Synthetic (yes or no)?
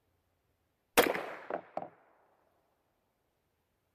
no